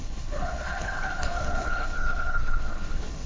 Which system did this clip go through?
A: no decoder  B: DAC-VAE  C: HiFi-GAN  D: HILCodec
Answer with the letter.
D